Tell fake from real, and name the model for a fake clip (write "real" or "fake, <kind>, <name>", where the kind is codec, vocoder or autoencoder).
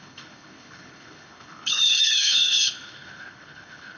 fake, codec, HILCodec